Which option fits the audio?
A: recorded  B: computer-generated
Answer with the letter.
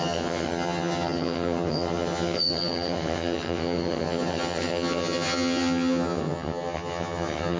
B